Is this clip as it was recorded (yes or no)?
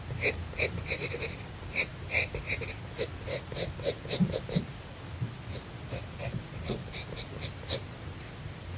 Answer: yes